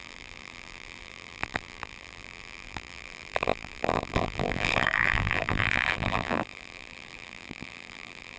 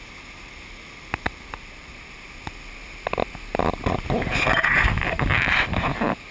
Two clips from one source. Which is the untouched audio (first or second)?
second